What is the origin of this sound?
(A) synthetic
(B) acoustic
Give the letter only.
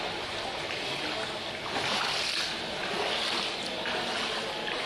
B